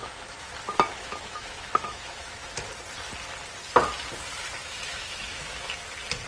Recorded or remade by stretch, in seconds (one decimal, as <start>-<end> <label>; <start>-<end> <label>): 0.0-0.5 remade; 0.5-0.9 recorded; 0.9-2.5 remade; 2.5-4.6 recorded; 4.6-5.8 remade; 5.8-6.3 recorded